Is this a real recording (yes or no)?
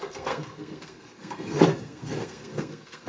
no